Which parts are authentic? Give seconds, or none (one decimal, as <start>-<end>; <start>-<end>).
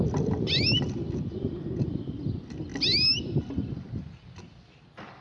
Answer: 0.0-5.2